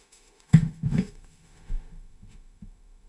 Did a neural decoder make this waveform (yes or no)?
yes